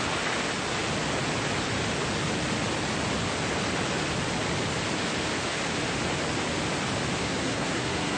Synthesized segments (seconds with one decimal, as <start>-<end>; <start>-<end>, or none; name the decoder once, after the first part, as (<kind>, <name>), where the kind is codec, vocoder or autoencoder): 7.2-8.2 (codec, SNAC)